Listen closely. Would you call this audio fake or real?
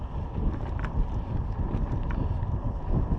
real